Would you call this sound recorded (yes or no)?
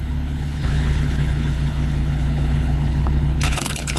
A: no